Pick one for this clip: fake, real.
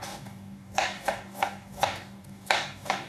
fake